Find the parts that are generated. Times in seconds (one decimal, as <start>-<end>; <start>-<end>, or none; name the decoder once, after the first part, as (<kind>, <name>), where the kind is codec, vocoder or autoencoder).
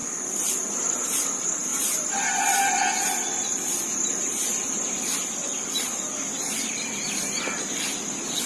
1.7-2.6 (vocoder, BigVGAN v2); 4.5-5.4